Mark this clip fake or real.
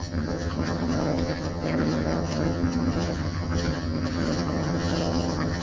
fake